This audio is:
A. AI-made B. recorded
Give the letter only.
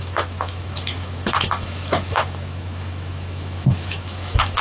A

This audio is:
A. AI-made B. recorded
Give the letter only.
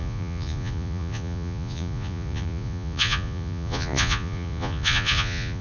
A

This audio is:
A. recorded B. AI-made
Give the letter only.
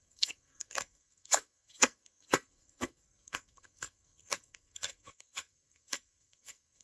B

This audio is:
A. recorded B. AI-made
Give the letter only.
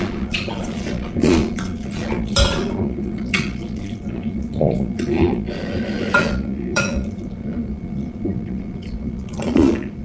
B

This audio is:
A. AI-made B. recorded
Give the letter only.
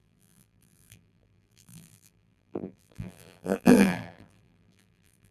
A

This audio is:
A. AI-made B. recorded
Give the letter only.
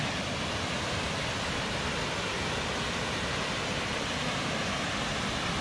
B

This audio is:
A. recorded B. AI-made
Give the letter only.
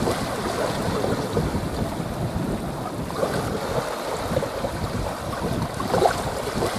A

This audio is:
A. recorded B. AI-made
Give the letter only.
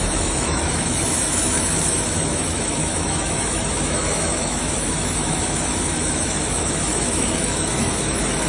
B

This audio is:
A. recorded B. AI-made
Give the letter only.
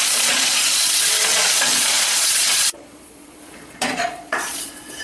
B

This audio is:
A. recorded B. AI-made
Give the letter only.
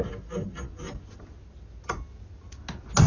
A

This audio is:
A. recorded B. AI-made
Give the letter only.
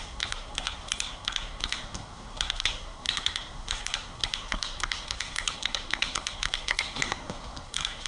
B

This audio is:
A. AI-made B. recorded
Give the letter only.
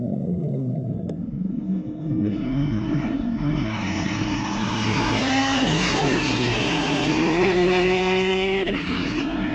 A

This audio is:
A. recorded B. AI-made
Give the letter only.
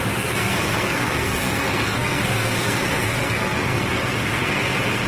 B